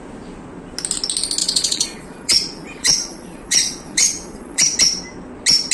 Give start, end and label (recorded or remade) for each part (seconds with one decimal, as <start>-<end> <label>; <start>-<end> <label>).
0.0-1.4 recorded; 1.4-4.8 remade; 4.8-5.7 recorded